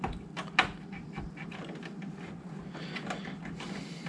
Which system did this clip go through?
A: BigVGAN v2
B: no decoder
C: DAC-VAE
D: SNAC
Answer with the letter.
B